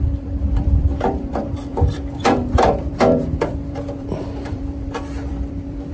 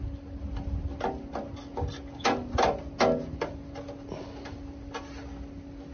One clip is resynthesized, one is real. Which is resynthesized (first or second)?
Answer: first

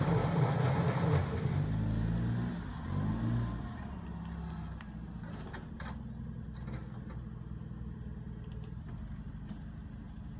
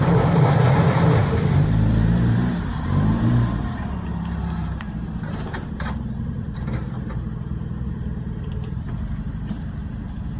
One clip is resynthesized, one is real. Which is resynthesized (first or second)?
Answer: second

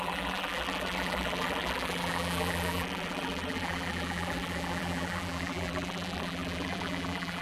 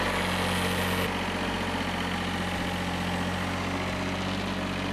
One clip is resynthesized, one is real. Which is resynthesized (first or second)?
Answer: first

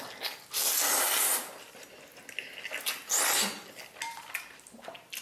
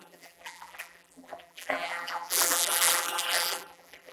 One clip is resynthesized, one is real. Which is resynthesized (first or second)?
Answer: second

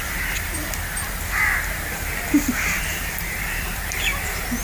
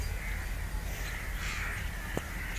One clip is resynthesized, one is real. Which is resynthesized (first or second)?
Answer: first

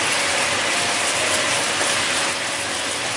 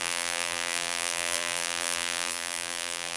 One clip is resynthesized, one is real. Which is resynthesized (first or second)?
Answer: second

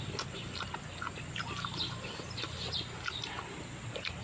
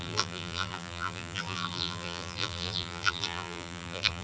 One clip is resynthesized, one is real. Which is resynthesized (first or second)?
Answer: second